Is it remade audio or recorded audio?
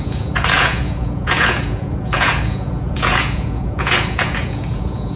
remade